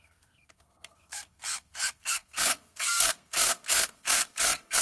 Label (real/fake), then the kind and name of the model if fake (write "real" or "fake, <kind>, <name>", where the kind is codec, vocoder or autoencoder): fake, codec, SNAC